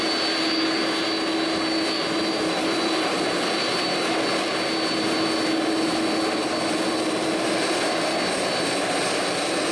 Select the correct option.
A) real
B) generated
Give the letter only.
A